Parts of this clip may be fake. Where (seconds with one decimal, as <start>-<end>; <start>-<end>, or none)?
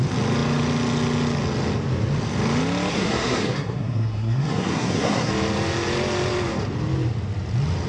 2.9-5.3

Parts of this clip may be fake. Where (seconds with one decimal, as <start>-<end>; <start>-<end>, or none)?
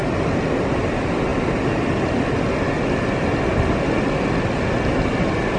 0.0-0.8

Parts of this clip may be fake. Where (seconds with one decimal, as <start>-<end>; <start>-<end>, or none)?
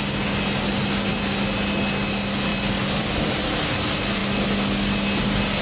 2.5-3.1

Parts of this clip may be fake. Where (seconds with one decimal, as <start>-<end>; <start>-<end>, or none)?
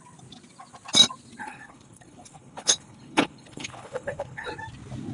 1.4-4.5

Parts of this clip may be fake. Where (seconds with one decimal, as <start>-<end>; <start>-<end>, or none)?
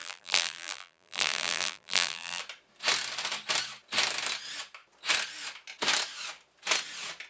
0.0-2.4